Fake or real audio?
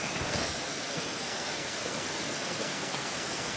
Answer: fake